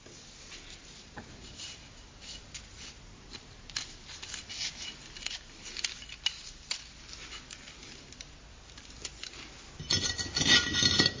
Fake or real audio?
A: real